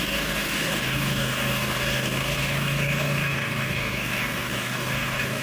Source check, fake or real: fake